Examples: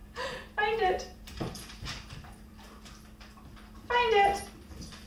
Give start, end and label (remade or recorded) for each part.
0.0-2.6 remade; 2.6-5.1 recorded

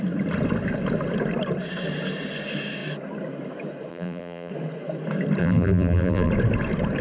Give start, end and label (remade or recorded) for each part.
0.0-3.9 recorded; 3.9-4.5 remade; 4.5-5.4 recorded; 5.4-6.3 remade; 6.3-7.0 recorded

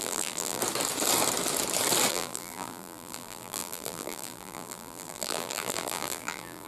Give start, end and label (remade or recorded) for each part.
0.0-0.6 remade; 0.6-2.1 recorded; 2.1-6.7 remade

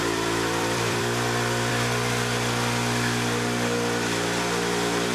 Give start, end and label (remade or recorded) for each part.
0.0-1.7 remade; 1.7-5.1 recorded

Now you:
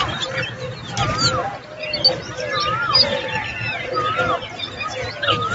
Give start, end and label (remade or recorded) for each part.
0.0-0.7 remade; 0.7-5.5 recorded